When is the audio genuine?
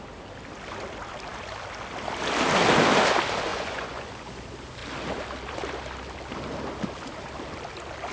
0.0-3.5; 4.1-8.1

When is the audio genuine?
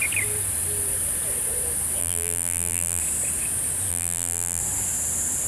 0.0-2.0; 3.0-3.9; 4.6-5.5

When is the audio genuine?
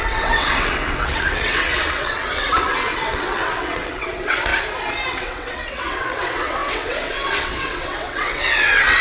4.5-5.1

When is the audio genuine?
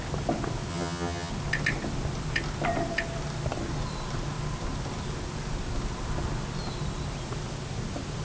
0.0-0.7; 1.3-8.2